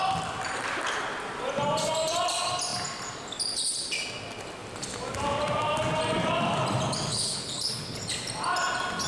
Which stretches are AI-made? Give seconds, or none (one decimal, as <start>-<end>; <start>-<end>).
7.1-8.0